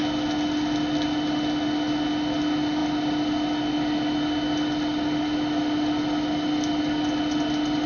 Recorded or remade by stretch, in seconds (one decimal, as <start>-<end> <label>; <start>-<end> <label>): 0.0-7.9 recorded